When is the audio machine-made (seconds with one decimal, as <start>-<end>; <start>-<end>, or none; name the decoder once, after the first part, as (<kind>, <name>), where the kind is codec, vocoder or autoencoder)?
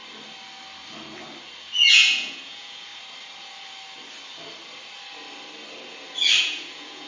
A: 1.6-2.9 (vocoder, Vocos); 6.4-7.1